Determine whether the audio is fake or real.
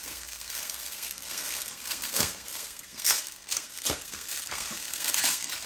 fake